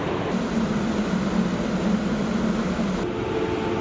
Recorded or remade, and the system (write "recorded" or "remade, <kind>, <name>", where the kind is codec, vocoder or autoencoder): recorded